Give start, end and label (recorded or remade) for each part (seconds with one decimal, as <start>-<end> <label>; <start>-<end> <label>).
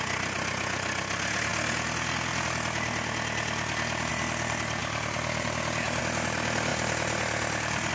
0.0-4.8 recorded; 4.8-6.0 remade; 6.0-6.7 recorded; 6.7-7.9 remade